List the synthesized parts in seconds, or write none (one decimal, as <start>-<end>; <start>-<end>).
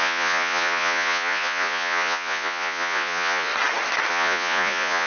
0.0-3.5; 4.1-5.1